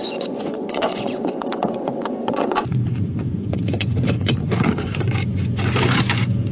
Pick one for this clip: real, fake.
fake